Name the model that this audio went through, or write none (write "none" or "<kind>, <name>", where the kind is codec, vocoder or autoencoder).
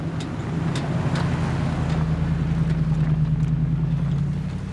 none